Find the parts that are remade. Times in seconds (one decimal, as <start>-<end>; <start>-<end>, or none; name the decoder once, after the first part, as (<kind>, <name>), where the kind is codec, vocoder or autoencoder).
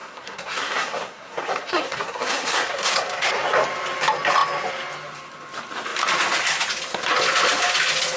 0.0-3.3 (codec, SNAC)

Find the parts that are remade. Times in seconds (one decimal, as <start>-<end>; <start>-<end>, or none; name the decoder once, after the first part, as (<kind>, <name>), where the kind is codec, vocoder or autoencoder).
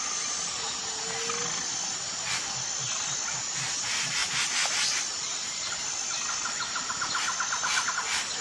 none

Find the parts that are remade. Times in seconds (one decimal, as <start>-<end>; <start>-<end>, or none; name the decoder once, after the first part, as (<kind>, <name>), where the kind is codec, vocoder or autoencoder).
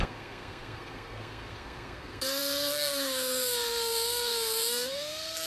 0.0-5.5 (codec, SNAC)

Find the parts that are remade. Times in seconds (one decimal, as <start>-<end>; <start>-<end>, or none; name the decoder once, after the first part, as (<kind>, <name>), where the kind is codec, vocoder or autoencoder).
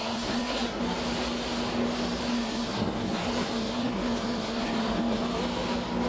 0.0-0.8 (codec, SNAC); 2.3-5.2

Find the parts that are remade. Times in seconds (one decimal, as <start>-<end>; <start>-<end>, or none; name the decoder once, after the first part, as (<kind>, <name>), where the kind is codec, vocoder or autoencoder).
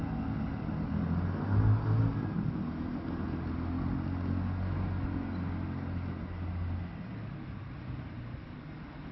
none